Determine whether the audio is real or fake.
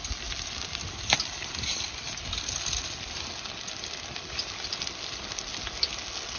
real